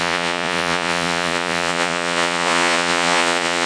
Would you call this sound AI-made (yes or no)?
yes